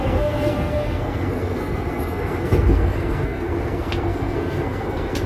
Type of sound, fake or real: fake